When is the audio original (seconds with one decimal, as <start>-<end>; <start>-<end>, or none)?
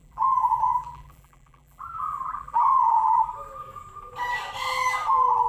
3.3-5.5